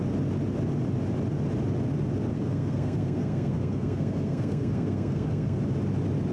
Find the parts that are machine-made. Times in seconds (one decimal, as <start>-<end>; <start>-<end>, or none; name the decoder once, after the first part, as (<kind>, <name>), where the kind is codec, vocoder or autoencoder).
2.3-5.6 (codec, SNAC)